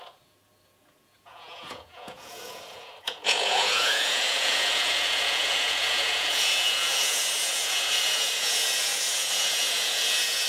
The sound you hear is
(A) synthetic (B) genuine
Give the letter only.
A